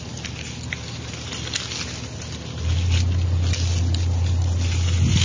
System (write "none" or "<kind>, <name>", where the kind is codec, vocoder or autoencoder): none